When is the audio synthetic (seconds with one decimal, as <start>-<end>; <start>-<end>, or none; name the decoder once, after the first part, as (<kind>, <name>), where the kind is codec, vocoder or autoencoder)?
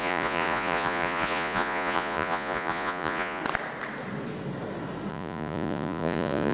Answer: 0.0-3.4 (vocoder, Vocos); 5.1-6.5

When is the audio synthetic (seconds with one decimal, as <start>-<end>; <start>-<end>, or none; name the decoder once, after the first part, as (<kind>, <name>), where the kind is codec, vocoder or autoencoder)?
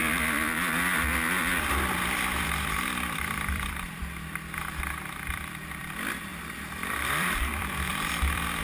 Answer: 1.6-4.0 (vocoder, BigVGAN v2); 5.3-8.6